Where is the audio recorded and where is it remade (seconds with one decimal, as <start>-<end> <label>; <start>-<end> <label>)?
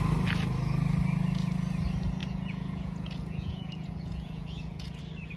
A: 0.0-2.2 recorded; 2.2-5.0 remade; 5.0-5.4 recorded